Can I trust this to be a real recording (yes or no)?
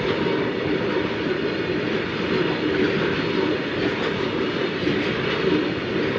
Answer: yes